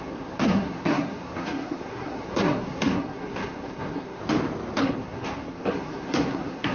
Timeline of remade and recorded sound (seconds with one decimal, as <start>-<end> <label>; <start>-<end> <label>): 0.0-4.2 remade; 4.2-4.8 recorded; 4.8-6.7 remade